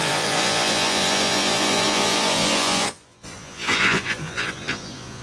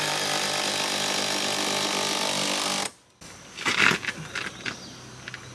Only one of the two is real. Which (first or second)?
second